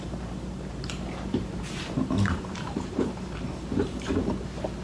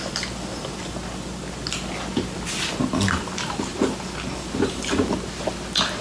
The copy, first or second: first